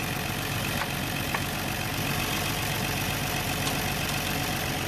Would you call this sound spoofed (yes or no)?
no